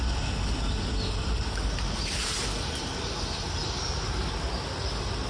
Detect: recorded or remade recorded